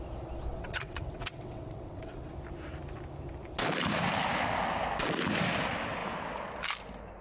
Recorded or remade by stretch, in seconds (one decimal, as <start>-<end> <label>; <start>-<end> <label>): 0.0-0.5 recorded; 0.5-2.3 remade; 2.3-7.2 recorded